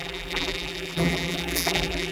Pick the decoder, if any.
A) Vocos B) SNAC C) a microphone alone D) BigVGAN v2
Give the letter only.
D